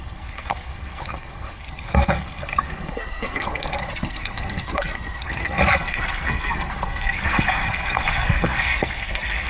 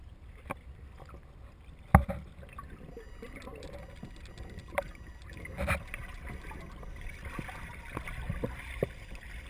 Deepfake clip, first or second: first